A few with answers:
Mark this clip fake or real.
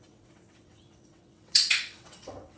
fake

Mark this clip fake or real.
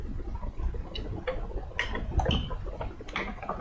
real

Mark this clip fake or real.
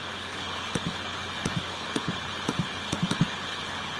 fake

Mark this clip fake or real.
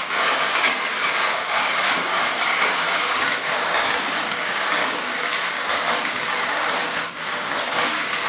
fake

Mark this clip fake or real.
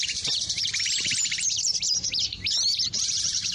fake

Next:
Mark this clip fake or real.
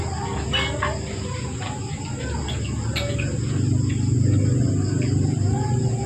real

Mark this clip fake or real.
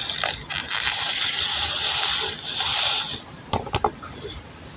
real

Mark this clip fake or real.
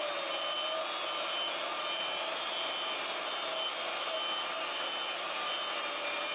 real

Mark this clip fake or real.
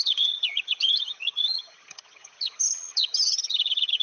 fake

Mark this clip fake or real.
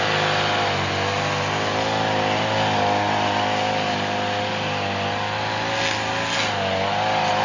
real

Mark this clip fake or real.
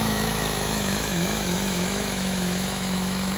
fake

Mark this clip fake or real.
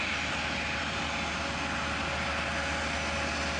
real